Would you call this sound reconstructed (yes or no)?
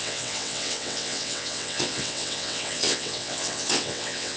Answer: yes